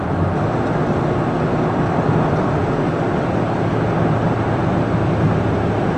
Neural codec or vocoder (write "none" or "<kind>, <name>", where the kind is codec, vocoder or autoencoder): none